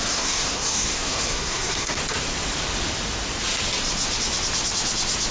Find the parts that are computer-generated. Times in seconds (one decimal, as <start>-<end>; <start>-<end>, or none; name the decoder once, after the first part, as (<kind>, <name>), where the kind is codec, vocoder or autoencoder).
0.0-2.0 (codec, SNAC)